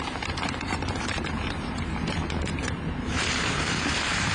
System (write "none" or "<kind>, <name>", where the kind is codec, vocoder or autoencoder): vocoder, BigVGAN v2